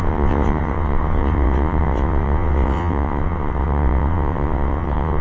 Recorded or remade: remade